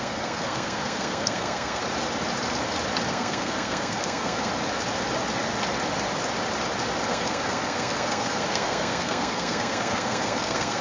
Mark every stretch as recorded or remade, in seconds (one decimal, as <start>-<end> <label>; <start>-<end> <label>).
0.0-1.8 remade; 1.8-3.1 recorded; 3.1-4.5 remade; 4.5-7.1 recorded; 7.1-10.8 remade